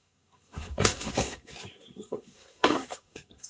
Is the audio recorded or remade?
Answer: remade